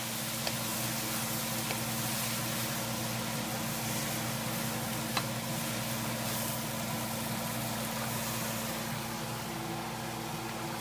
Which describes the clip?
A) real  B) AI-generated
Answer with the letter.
A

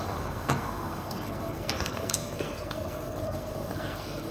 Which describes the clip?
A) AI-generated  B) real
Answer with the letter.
A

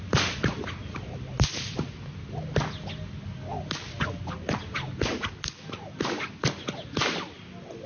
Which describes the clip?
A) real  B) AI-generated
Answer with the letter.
A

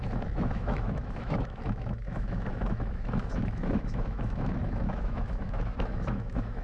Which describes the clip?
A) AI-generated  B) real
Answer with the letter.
A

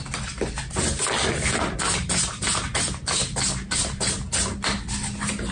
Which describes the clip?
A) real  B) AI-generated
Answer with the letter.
A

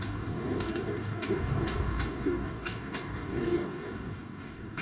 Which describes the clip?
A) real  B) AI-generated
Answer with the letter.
B